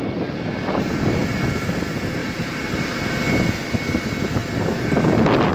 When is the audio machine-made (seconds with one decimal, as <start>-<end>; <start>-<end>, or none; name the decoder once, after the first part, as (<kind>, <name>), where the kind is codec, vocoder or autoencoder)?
4.4-4.9 (vocoder, BigVGAN v2)